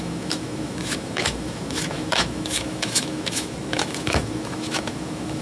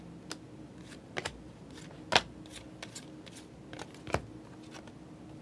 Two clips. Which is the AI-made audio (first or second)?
first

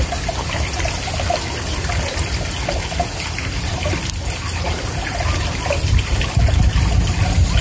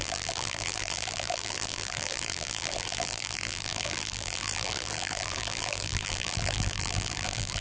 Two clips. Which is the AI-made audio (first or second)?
second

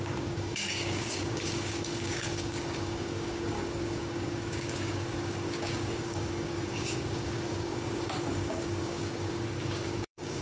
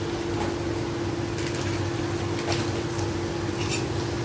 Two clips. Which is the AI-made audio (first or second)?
first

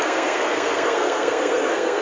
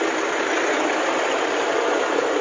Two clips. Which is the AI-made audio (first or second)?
first